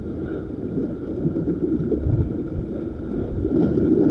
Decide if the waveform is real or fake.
real